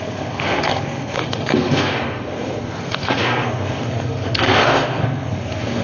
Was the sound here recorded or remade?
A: remade